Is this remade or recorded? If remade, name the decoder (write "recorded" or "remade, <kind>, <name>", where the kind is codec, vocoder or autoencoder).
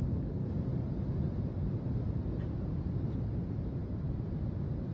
recorded